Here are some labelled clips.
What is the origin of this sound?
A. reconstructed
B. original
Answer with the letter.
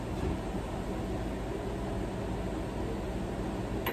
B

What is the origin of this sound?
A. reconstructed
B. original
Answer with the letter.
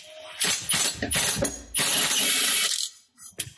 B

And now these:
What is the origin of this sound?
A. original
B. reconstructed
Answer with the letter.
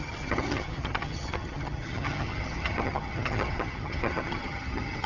B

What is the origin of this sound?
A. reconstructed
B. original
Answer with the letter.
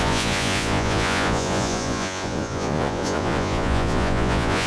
A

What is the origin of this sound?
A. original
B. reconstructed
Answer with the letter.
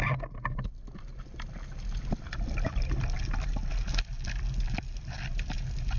A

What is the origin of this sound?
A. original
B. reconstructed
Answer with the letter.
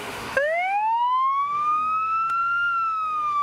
B